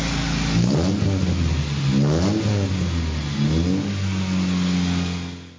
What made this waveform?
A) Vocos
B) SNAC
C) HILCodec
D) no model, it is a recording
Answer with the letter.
D